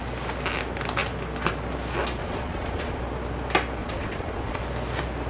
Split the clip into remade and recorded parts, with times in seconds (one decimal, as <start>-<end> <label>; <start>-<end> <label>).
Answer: 0.0-2.2 recorded; 2.2-3.0 remade; 3.0-3.8 recorded; 3.8-4.6 remade; 4.6-5.3 recorded